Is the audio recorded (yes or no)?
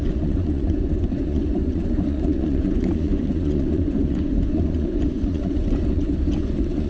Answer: no